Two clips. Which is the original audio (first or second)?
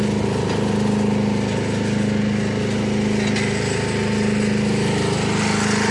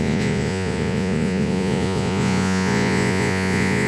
first